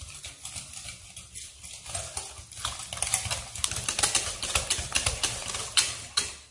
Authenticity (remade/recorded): recorded